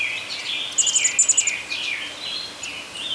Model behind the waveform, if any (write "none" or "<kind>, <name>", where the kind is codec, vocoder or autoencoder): none